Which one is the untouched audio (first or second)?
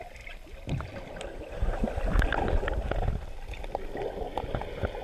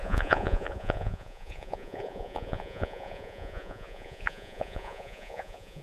first